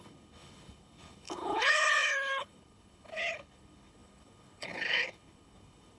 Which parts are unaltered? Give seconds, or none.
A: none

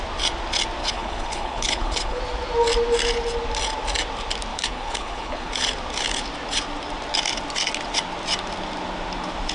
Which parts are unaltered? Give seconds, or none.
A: 0.0-0.8; 2.2-4.5; 5.5-9.5

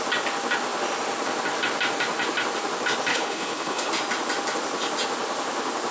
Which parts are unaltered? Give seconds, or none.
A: 0.0-3.1; 3.9-5.9